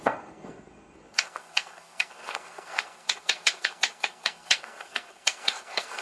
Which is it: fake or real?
fake